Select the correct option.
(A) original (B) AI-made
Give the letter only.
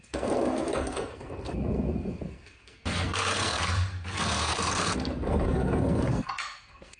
B